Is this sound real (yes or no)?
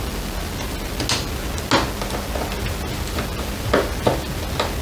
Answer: yes